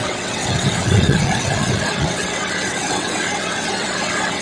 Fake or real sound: fake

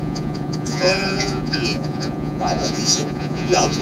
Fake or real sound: fake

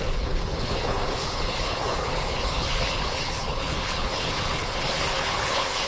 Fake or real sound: fake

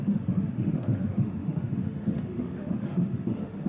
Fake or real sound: fake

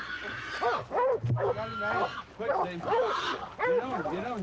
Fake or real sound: real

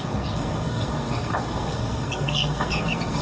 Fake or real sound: fake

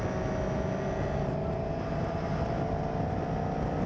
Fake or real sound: real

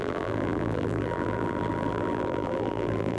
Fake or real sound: fake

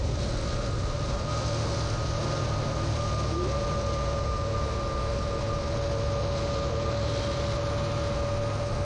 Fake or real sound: real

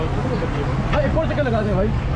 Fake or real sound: real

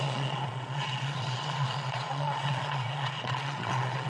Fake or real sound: fake